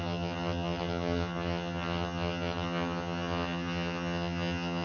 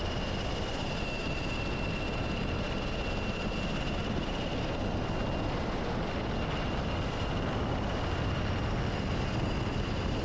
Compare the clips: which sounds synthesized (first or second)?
first